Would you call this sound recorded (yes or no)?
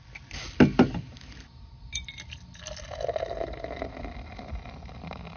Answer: yes